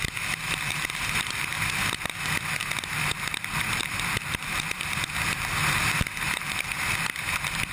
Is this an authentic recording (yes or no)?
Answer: yes